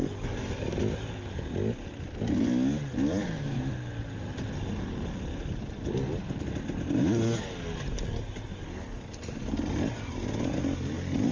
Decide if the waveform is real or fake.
real